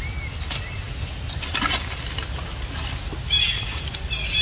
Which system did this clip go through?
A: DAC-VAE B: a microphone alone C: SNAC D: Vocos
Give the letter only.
B